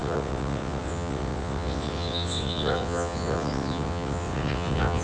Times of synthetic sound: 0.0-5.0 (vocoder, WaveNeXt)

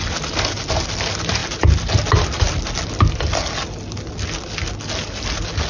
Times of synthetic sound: none

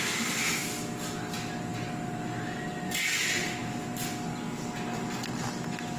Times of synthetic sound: none

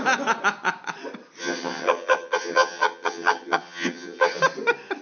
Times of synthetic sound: 1.4-4.4 (vocoder, HiFi-GAN)

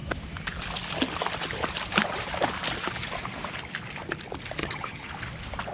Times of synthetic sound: 4.6-5.1 (vocoder, HiFi-GAN)